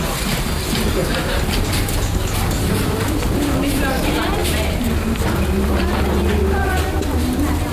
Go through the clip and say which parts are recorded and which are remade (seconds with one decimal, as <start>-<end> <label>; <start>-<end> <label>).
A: 0.0-7.7 recorded